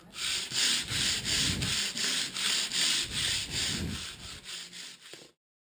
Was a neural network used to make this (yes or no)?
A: no